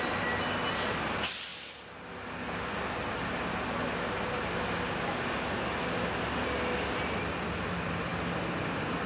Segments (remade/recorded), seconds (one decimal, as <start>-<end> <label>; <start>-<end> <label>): 0.0-9.1 recorded